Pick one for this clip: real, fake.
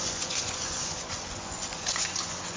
fake